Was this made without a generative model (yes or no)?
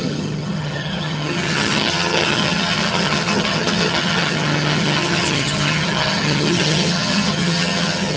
no